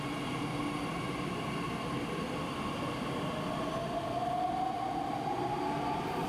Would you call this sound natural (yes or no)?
yes